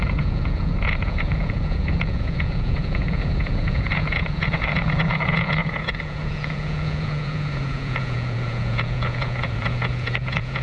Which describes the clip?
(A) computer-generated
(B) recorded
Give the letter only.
A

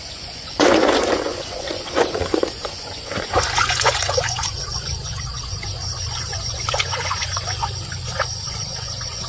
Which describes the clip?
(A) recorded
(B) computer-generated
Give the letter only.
B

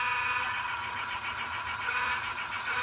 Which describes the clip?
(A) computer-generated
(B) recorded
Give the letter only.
A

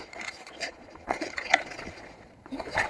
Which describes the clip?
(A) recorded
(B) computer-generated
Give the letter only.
B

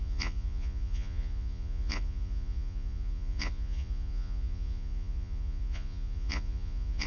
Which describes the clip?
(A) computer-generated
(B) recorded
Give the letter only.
A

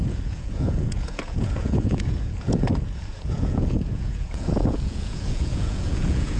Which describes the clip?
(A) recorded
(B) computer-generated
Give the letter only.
B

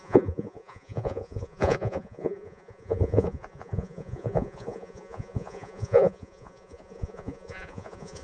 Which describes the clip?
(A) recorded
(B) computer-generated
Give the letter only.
B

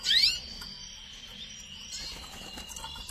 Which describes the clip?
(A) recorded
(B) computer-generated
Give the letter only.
A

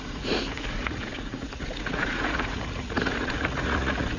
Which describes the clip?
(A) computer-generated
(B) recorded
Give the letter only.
A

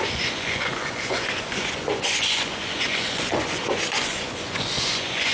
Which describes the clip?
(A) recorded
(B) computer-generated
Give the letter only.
B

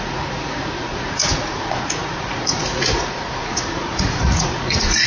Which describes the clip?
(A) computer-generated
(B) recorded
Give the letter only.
A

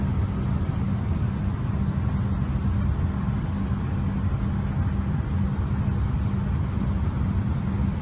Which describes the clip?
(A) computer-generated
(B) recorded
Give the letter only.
B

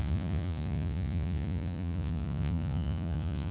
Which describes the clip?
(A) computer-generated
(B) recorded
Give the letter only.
A